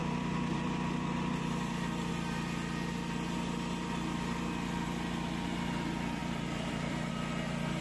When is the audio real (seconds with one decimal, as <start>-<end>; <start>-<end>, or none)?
2.1-6.2; 7.1-7.8